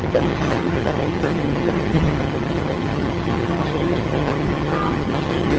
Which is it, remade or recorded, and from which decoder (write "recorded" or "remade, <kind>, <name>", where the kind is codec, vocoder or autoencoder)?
remade, vocoder, HiFi-GAN